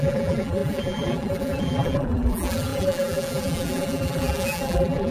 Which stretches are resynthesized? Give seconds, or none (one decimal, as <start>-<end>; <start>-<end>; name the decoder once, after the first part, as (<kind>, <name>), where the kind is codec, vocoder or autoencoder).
0.0-5.1 (vocoder, BigVGAN v2)